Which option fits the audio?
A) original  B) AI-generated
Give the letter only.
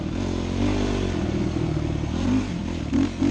A